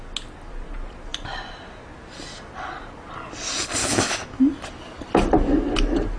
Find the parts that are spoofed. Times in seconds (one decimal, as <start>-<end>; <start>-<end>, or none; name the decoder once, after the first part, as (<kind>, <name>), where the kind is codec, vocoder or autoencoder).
3.8-4.4 (autoencoder, DAC-VAE)